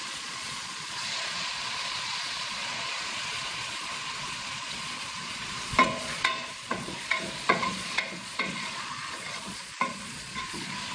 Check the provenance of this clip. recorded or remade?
remade